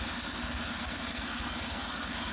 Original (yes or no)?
no